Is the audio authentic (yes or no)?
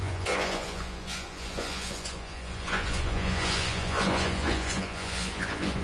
no